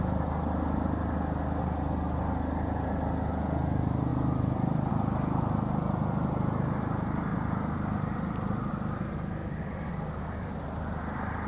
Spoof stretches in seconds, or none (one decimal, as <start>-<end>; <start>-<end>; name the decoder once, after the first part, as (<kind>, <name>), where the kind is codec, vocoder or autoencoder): 4.1-4.9 (vocoder, BigVGAN v2); 7.3-8.4; 9.4-9.9